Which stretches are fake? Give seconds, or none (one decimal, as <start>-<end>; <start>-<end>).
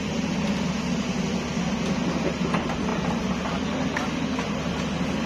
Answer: none